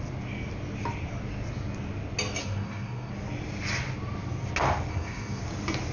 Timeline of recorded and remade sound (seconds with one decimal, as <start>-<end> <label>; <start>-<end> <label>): 0.0-2.4 recorded; 2.4-3.1 remade; 3.1-4.9 recorded; 4.9-5.4 remade; 5.4-5.9 recorded

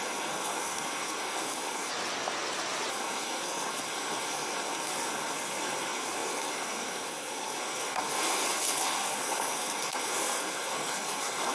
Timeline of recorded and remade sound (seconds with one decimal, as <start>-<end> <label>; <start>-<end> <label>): 0.0-1.9 remade; 1.9-2.9 recorded; 2.9-11.5 remade

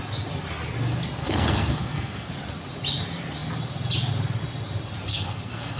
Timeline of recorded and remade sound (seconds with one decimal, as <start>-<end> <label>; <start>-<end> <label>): 0.0-1.2 recorded; 1.2-2.3 remade; 2.3-5.1 recorded; 5.1-5.8 remade

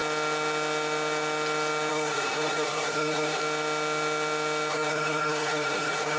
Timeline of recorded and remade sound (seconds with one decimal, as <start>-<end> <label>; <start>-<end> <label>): 0.0-1.9 recorded; 1.9-3.4 remade; 3.4-4.7 recorded; 4.7-6.2 remade